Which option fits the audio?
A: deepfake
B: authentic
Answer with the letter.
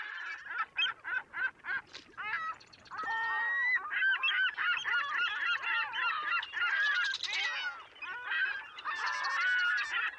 B